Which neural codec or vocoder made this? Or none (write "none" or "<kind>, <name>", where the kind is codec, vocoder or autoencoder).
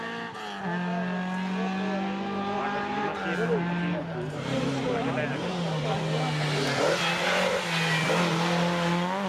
none